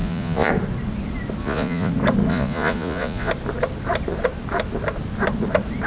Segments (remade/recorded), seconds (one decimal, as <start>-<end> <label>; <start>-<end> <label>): 0.0-0.5 remade; 0.5-1.4 recorded; 1.4-1.9 remade; 1.9-2.3 recorded; 2.3-3.3 remade; 3.3-5.9 recorded